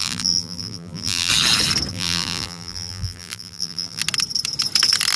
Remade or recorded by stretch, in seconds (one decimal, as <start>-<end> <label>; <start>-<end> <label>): 0.0-1.3 remade; 1.3-1.9 recorded; 1.9-4.0 remade; 4.0-5.2 recorded